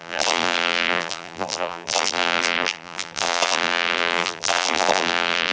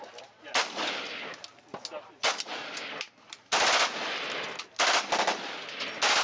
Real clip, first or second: second